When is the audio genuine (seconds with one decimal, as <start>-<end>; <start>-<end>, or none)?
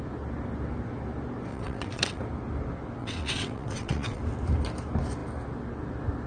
0.0-1.5; 2.2-3.0; 4.2-6.3